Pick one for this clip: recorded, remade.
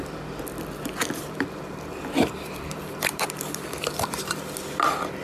remade